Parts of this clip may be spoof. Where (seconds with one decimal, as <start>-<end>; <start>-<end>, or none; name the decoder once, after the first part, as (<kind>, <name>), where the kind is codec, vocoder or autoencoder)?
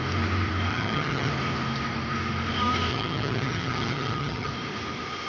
0.7-1.3 (vocoder, HiFi-GAN); 2.9-4.5